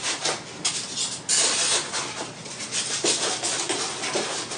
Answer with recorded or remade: recorded